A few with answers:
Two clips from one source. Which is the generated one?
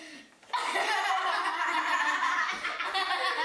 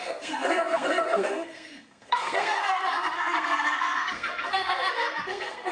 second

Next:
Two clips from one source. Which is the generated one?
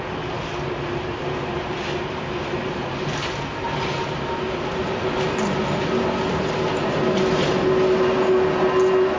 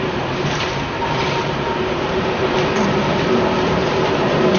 second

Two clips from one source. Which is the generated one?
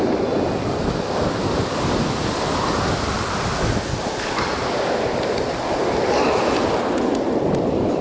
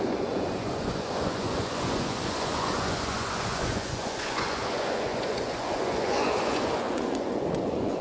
second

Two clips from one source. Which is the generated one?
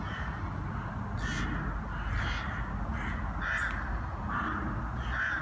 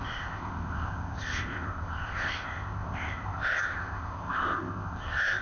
second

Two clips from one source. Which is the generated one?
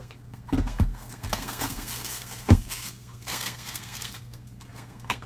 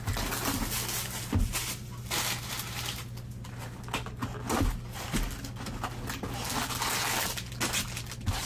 first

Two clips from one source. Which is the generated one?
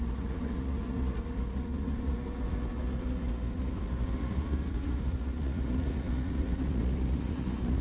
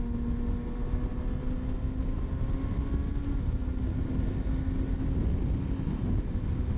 first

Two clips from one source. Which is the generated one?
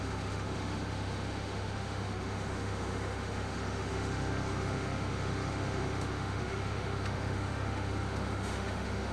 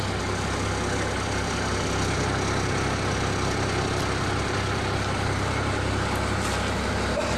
first